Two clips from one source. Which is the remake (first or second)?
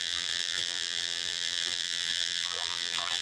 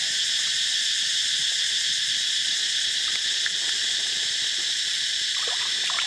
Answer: first